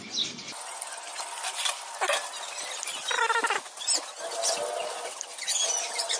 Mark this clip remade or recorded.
recorded